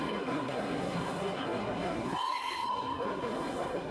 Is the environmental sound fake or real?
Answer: fake